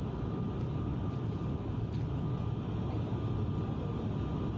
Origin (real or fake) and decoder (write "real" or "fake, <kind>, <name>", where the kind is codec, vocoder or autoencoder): real